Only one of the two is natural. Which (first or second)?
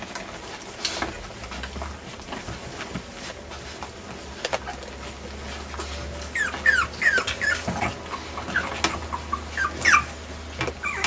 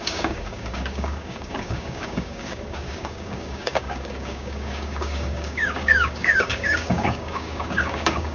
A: first